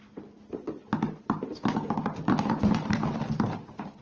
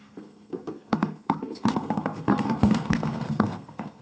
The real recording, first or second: first